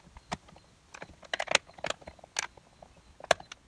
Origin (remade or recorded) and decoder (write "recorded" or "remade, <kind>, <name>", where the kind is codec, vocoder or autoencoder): recorded